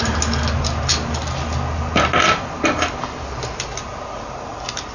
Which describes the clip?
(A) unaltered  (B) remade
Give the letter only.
A